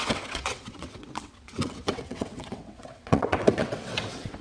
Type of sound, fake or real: fake